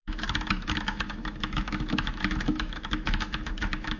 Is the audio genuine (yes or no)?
no